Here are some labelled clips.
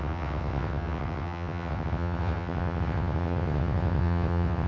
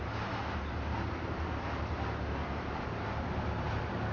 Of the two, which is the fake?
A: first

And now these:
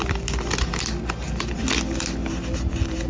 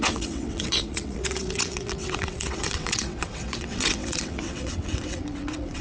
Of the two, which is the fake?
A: second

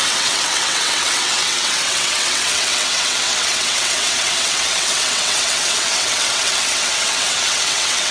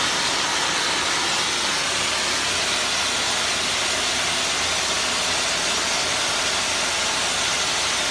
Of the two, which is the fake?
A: first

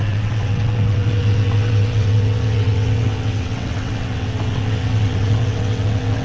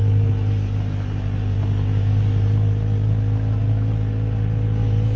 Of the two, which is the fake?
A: first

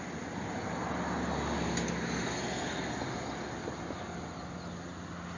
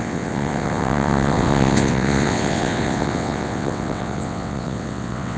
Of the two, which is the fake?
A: second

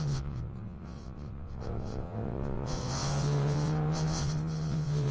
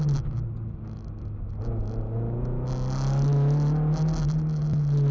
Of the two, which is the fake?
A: first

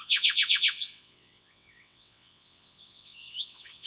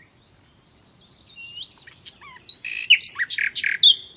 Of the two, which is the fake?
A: first